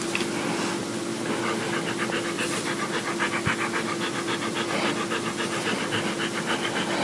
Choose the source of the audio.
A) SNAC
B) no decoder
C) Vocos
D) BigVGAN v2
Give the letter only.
B